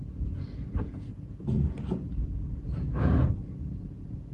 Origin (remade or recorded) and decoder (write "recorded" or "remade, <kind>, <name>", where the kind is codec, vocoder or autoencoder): remade, vocoder, Vocos